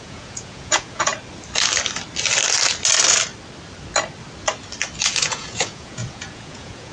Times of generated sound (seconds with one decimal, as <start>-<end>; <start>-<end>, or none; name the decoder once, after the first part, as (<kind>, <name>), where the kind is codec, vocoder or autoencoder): 0.0-1.1 (vocoder, Vocos); 5.2-6.9